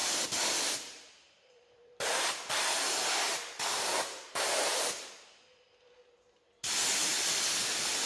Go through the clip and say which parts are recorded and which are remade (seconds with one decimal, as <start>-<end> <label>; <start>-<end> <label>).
0.0-2.6 remade; 2.6-3.3 recorded; 3.3-5.1 remade; 5.1-8.1 recorded